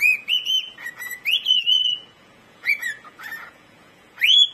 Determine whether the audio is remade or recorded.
remade